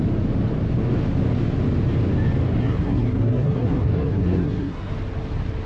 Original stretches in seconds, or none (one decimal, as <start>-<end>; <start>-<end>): 0.0-2.6; 4.9-5.7